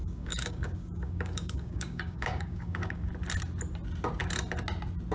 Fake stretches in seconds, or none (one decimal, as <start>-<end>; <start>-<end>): 0.0-3.1